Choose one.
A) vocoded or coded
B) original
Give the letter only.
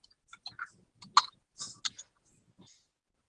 B